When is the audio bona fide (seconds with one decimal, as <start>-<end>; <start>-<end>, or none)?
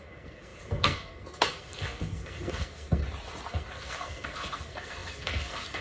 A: 3.0-3.5